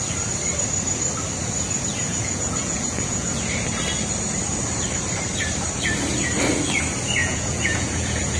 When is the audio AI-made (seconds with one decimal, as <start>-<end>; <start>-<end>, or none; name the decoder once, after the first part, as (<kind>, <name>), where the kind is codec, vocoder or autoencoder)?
1.9-3.4 (vocoder, Vocos); 7.2-8.4